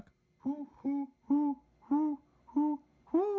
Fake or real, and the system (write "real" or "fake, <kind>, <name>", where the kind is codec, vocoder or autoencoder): real